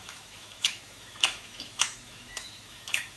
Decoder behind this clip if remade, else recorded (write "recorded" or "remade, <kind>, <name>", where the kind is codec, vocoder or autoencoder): remade, autoencoder, DAC-VAE